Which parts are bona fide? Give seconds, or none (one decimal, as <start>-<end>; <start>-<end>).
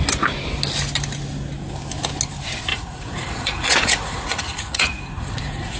0.0-2.7